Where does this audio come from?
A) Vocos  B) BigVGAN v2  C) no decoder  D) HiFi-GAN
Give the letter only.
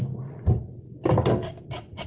C